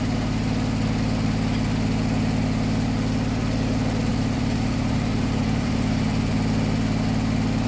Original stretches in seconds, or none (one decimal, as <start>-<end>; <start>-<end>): 0.0-4.1; 6.3-7.7